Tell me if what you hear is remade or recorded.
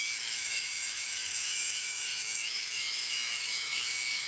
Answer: remade